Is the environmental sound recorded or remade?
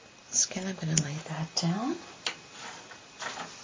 recorded